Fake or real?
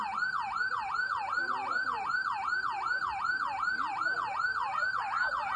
real